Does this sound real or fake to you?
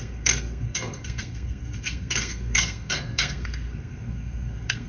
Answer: fake